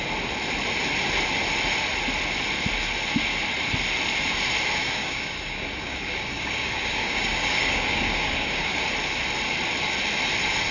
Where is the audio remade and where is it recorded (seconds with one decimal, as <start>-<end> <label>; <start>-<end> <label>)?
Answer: 0.0-4.8 recorded; 4.8-8.8 remade; 8.8-10.7 recorded